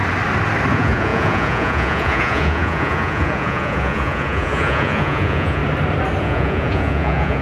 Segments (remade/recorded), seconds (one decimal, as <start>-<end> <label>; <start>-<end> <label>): 0.0-0.7 recorded; 0.7-5.6 remade; 5.6-6.2 recorded; 6.2-7.4 remade